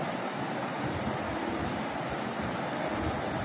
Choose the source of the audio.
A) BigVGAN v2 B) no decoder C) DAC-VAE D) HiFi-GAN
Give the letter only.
A